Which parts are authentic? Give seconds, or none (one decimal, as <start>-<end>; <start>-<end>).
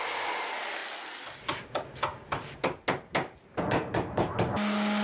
0.0-5.0